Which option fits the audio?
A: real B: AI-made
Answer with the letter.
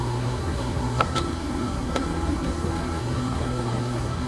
B